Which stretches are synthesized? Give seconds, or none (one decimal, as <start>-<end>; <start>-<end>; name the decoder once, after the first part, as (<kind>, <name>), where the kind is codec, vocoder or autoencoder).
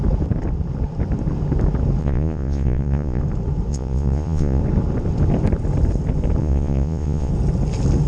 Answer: 2.0-3.2 (vocoder, Vocos); 3.7-4.6; 6.4-7.3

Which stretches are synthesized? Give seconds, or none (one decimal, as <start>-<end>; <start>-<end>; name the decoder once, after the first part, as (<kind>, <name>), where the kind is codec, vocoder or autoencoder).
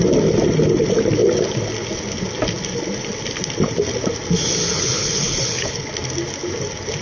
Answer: 4.7-5.9 (codec, HILCodec)